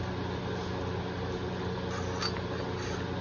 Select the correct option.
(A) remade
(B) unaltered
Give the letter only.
B